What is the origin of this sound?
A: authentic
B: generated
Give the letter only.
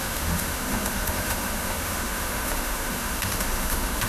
B